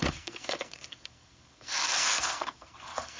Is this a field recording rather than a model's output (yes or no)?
no